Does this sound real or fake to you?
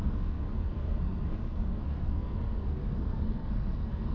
fake